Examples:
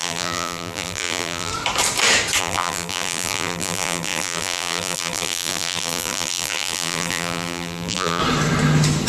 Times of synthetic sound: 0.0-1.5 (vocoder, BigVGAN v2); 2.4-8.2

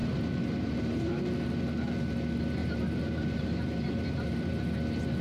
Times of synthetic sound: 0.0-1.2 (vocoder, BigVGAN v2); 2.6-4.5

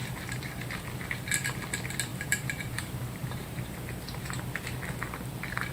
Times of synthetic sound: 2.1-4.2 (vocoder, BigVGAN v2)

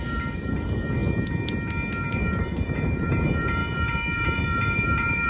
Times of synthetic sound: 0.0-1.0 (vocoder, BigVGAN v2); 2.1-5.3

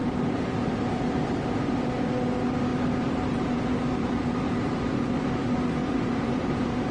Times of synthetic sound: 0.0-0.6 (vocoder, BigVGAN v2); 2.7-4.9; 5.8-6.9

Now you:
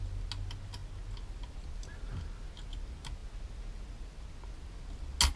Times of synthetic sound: none

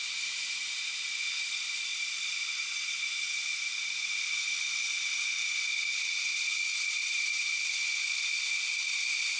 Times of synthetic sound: 1.4-2.2 (vocoder, BigVGAN v2); 6.7-7.5

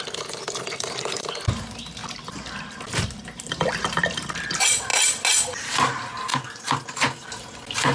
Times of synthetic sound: none